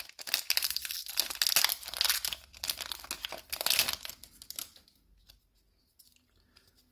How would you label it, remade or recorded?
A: recorded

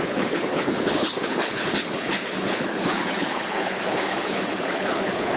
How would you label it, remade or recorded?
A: remade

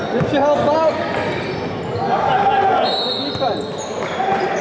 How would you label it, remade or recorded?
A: recorded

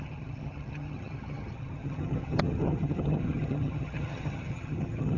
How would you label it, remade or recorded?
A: remade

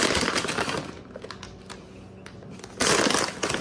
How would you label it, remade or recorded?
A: recorded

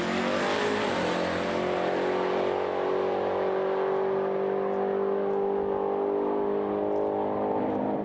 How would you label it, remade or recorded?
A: recorded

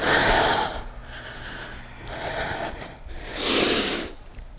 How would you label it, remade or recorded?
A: recorded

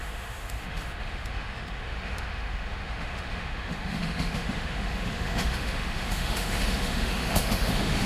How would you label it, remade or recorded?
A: remade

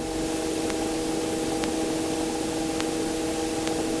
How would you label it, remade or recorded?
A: recorded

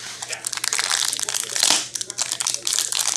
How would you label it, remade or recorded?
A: recorded